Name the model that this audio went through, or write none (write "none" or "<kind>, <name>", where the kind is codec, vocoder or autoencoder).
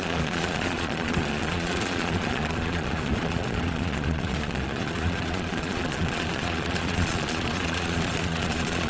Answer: vocoder, Vocos